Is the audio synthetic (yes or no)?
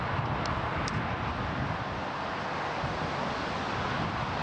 no